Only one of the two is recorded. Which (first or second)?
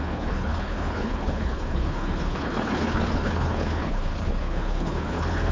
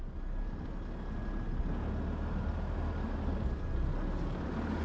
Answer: second